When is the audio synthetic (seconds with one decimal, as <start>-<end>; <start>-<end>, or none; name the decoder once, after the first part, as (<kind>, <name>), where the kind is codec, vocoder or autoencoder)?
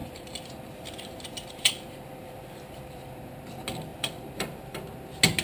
0.0-3.2 (vocoder, BigVGAN v2); 3.9-4.8